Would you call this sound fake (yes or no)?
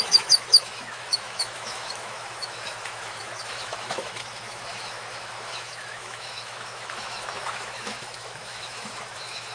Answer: yes